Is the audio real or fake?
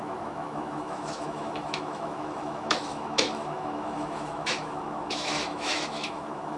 fake